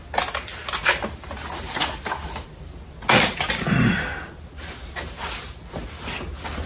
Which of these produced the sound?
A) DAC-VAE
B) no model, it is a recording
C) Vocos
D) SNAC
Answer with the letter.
B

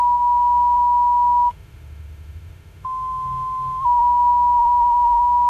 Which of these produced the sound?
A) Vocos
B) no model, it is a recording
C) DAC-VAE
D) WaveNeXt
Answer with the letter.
C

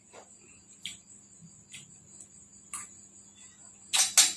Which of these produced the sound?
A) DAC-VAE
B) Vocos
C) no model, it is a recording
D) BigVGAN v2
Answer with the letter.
C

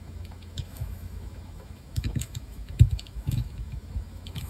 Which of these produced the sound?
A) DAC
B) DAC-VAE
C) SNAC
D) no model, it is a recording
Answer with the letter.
B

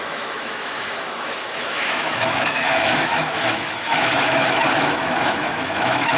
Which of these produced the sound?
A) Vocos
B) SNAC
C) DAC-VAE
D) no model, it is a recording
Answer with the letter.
C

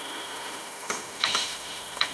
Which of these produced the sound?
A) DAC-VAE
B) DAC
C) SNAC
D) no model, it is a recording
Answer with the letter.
A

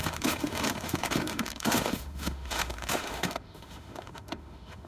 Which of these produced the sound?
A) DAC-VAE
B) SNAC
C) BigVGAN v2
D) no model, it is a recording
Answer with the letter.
A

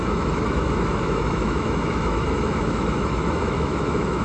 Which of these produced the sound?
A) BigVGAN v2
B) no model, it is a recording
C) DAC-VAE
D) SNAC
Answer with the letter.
C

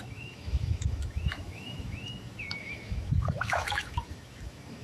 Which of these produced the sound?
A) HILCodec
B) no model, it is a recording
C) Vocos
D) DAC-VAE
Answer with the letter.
D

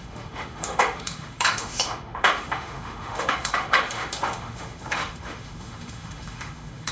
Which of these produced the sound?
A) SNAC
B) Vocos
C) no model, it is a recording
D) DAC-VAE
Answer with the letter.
D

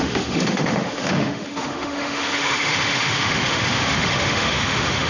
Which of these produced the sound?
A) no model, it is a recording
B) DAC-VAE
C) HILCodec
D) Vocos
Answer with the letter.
B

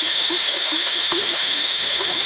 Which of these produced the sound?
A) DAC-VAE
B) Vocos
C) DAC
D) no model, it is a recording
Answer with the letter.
A